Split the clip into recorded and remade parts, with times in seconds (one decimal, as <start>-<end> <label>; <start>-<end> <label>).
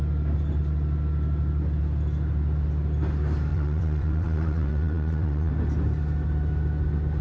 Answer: 0.0-3.5 recorded; 3.5-5.5 remade; 5.5-7.2 recorded